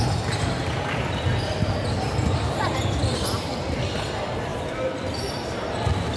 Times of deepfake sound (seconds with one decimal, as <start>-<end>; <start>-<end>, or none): 4.5-6.2